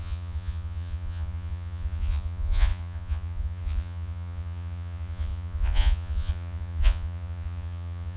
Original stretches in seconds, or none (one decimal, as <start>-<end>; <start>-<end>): none